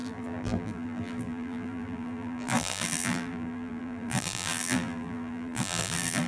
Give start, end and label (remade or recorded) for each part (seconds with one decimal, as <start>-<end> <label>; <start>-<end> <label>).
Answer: 0.0-6.3 remade